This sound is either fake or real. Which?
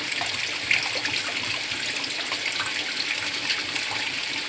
real